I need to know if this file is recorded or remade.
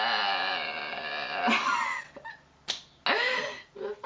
recorded